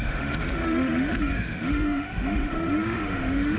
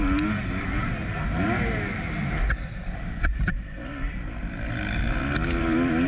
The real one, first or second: second